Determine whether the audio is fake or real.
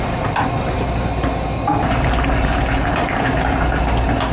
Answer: real